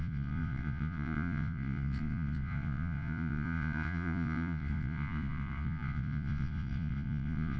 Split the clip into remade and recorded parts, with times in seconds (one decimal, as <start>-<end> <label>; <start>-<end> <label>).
0.0-7.6 remade

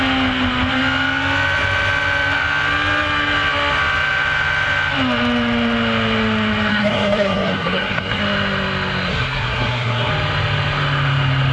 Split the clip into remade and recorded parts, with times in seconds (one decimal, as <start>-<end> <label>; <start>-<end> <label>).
0.0-6.7 recorded; 6.7-8.2 remade; 8.2-9.1 recorded; 9.1-10.1 remade; 10.1-11.5 recorded

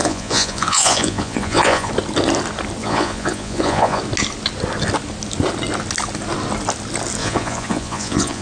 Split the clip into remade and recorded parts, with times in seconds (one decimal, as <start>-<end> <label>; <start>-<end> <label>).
0.0-1.9 remade; 1.9-2.8 recorded; 2.8-4.0 remade; 4.0-7.2 recorded; 7.2-8.4 remade

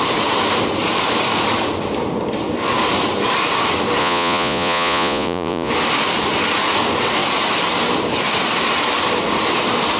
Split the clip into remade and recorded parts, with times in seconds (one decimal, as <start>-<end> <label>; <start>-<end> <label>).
0.0-4.0 recorded; 4.0-5.7 remade; 5.7-10.0 recorded

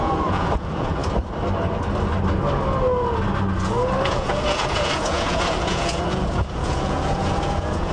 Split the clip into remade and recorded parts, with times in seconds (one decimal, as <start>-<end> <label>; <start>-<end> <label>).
0.0-1.0 remade; 1.0-4.0 recorded; 4.0-7.9 remade

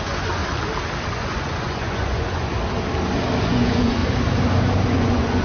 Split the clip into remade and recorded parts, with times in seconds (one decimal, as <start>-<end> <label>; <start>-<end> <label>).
0.0-0.4 remade; 0.4-1.1 recorded; 1.1-2.5 remade; 2.5-3.4 recorded; 3.4-4.0 remade; 4.0-4.9 recorded; 4.9-5.4 remade

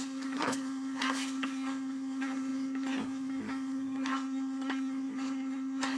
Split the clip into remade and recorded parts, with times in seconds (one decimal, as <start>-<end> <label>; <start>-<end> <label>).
0.0-6.0 remade

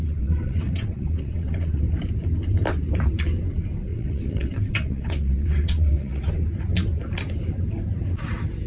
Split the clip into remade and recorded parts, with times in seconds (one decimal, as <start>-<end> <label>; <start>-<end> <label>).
0.0-1.8 remade; 1.8-3.9 recorded; 3.9-6.3 remade; 6.3-8.7 recorded